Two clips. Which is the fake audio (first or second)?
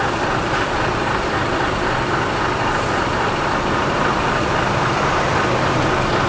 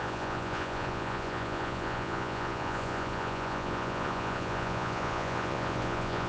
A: second